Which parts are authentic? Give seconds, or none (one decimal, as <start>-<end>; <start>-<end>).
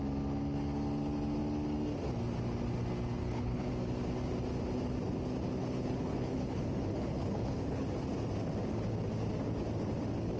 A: 0.0-3.2; 3.7-5.6; 7.9-10.4